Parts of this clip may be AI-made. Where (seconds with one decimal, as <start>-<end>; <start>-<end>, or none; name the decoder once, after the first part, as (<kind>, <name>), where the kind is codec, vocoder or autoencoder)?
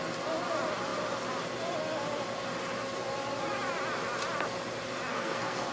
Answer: 5.1-5.7 (codec, SNAC)